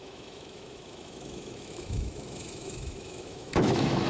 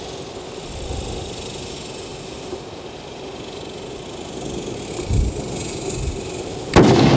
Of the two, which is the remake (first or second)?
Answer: first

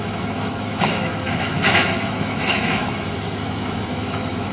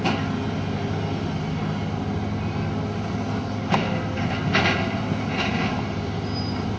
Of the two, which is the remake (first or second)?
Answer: first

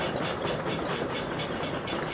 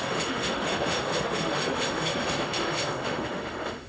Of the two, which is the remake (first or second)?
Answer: second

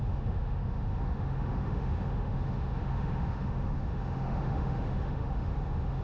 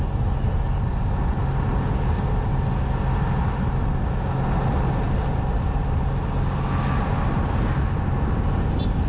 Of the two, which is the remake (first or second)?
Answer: first